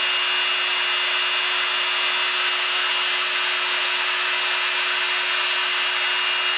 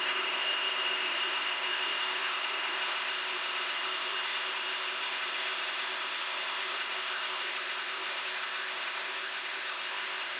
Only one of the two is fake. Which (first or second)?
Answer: second